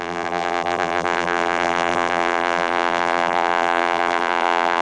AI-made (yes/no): yes